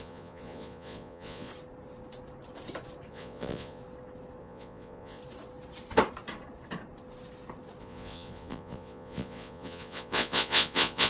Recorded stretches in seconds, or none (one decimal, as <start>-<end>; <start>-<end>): 1.5-3.1; 3.8-4.4; 5.2-7.8